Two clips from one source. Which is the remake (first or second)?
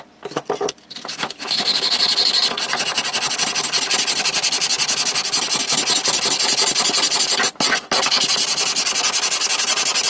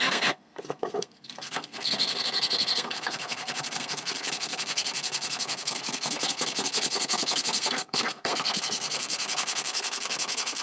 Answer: second